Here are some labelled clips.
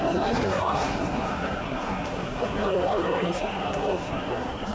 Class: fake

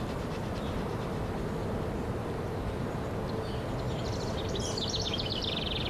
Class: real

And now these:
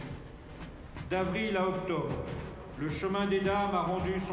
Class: real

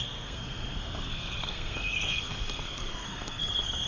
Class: fake